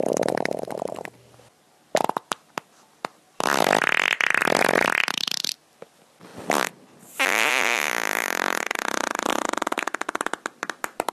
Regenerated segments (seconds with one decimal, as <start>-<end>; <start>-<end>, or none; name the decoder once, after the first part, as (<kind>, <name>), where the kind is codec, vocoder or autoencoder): 0.0-6.3 (vocoder, BigVGAN v2); 7.5-11.1